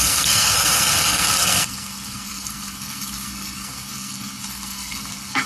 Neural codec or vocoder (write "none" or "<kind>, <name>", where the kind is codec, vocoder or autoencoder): codec, SNAC